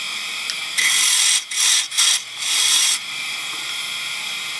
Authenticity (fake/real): fake